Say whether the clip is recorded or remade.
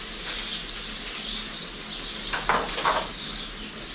recorded